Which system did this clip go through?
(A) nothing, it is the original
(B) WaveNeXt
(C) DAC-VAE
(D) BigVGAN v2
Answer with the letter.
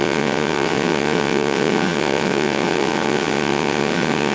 B